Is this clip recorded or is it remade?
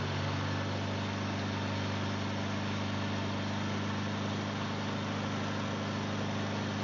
recorded